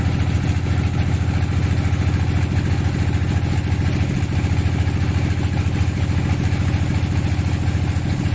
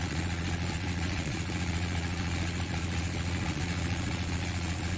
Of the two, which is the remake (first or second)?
second